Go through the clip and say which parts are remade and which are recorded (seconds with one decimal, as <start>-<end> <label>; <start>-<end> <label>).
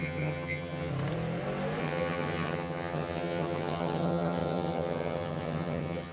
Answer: 0.0-0.9 remade; 0.9-1.8 recorded; 1.8-6.1 remade